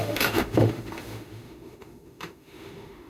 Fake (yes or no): yes